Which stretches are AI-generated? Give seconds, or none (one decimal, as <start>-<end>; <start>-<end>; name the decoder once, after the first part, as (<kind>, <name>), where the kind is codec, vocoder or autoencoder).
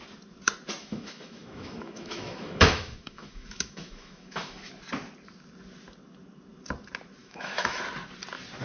0.8-4.7 (autoencoder, DAC-VAE); 7.2-7.8